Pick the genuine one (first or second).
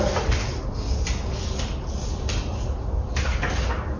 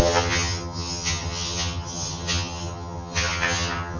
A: first